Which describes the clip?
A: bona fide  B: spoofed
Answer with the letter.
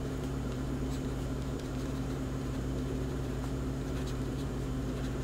B